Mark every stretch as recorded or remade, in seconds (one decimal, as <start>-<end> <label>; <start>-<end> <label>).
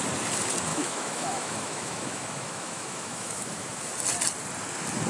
0.0-0.7 recorded; 0.7-3.8 remade; 3.8-5.1 recorded